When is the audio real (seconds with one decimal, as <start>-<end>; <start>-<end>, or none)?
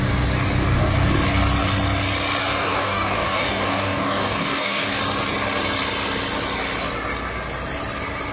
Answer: 0.0-2.4; 5.0-8.3